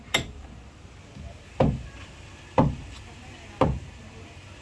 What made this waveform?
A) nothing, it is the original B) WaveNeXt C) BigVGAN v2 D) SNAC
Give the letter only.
A